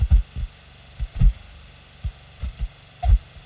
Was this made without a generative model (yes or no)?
yes